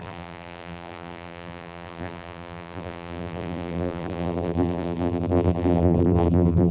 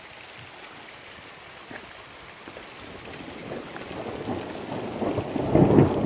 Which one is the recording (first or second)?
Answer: second